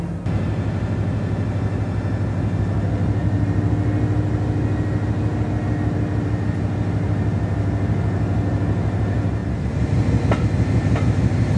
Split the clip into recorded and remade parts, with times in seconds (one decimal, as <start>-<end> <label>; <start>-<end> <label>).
0.0-3.2 recorded; 3.2-3.7 remade; 3.7-11.6 recorded